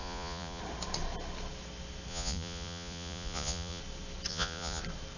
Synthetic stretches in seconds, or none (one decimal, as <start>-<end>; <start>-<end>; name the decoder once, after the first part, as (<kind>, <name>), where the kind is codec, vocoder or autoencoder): 0.0-0.6 (vocoder, Vocos); 2.1-3.8; 4.3-4.8